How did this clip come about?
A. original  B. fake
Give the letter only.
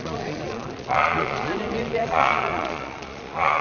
B